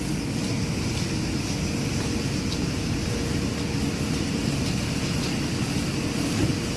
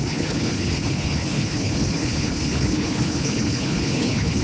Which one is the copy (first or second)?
second